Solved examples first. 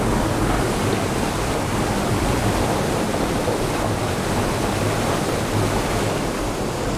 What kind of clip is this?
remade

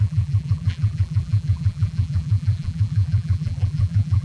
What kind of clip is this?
remade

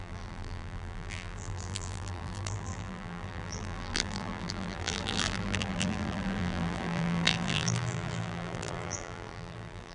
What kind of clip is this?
remade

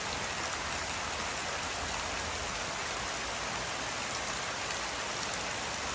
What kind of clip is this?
recorded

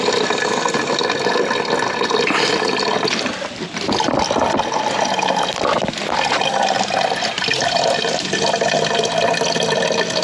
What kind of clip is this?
recorded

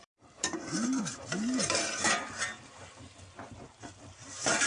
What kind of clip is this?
remade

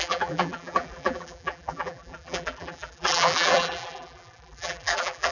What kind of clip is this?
remade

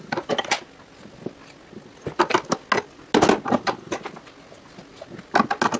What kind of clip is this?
recorded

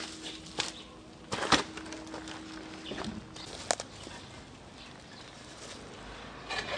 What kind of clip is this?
recorded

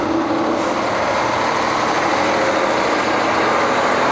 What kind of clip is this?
recorded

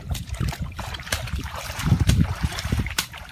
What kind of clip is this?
remade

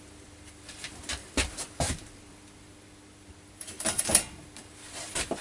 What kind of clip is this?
remade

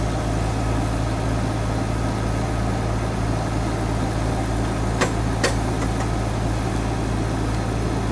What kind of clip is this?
recorded